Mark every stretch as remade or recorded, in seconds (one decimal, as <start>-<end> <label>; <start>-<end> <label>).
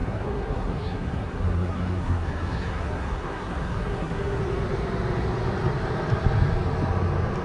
0.0-4.4 remade; 4.4-7.4 recorded